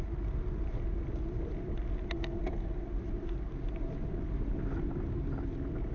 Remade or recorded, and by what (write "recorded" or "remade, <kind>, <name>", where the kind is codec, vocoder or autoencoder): recorded